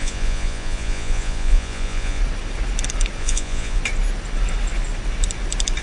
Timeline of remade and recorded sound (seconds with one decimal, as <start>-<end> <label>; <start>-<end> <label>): 0.0-2.2 remade; 2.2-3.2 recorded; 3.2-3.8 remade; 3.8-5.8 recorded